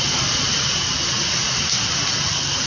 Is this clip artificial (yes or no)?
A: no